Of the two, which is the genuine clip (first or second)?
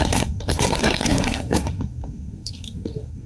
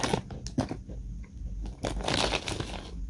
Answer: second